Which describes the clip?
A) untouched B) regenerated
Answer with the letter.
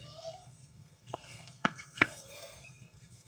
B